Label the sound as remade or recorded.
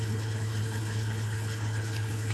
remade